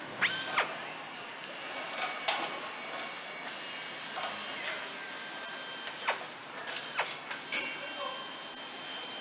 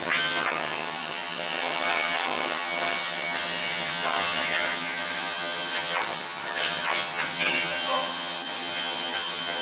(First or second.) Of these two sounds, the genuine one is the first